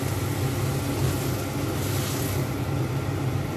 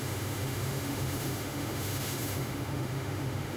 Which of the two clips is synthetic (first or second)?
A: second